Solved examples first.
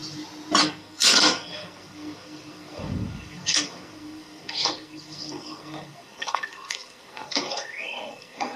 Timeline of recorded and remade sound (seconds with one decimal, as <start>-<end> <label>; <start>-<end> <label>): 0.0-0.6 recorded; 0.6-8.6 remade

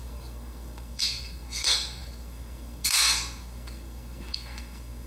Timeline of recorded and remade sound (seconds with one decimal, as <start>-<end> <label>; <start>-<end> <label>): 0.0-5.1 remade

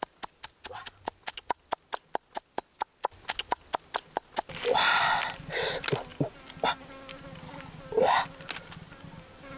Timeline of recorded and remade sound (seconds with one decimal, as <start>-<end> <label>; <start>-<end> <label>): 0.0-9.6 recorded